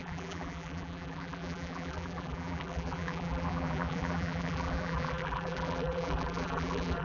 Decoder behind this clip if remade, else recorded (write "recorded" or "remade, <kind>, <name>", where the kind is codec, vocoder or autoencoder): remade, vocoder, BigVGAN v2